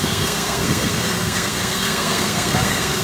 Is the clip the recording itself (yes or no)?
no